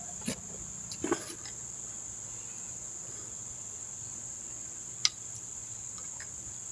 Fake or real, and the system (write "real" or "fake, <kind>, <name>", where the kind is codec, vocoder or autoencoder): real